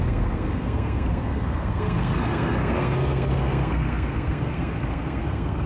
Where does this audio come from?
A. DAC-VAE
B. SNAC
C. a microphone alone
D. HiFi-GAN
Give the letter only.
B